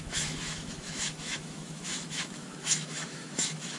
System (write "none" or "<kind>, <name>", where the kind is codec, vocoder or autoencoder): autoencoder, DAC-VAE